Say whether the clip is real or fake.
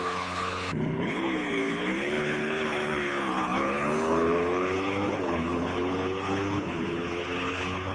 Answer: fake